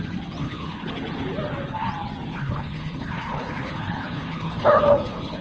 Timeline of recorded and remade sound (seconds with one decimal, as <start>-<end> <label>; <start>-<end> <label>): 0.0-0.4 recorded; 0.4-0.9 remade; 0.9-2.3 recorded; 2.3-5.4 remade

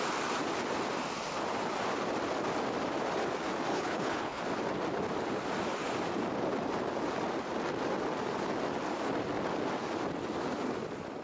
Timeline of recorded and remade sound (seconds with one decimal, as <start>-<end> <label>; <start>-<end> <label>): 0.0-3.7 recorded; 3.7-4.4 remade; 4.4-11.2 recorded

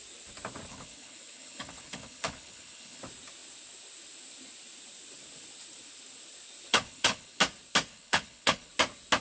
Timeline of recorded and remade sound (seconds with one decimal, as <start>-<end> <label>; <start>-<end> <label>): 0.0-0.7 recorded; 0.7-3.0 remade; 3.0-6.7 recorded; 6.7-7.4 remade; 7.4-7.9 recorded; 7.9-8.7 remade; 8.7-9.2 recorded

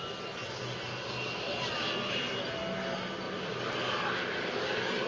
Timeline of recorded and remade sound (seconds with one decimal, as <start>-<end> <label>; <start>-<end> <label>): 0.0-5.1 recorded

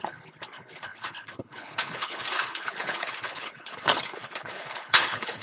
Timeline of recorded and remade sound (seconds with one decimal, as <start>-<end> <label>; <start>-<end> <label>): 0.0-5.4 remade

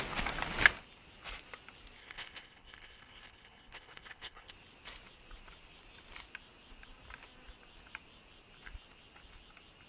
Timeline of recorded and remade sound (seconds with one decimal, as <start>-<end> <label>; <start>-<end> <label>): 0.0-2.0 recorded; 2.0-4.5 remade; 4.5-9.9 recorded

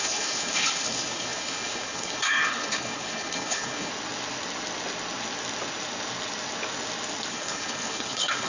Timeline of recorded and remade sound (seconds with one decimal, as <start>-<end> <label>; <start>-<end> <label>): 0.0-3.9 remade; 3.9-7.3 recorded; 7.3-8.5 remade

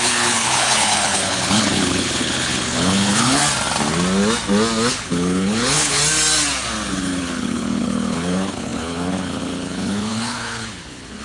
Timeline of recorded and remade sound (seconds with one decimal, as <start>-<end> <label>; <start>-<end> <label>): 0.0-3.4 remade; 3.4-4.9 recorded; 4.9-6.0 remade; 6.0-6.9 recorded; 6.9-11.2 remade